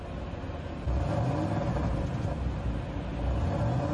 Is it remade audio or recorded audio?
recorded